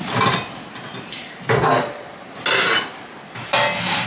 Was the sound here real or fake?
real